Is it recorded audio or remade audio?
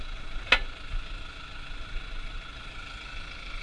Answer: recorded